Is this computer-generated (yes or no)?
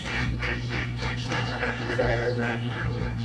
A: yes